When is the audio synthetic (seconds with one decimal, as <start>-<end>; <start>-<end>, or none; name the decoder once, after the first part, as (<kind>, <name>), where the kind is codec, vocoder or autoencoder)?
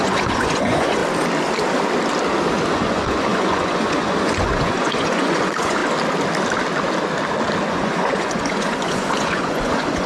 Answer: 0.0-1.0 (vocoder, Vocos); 2.7-5.8; 7.7-10.1